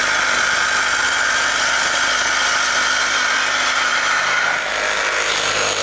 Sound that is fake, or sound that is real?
fake